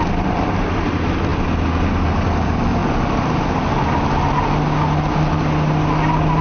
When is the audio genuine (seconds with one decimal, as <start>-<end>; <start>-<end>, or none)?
0.0-6.4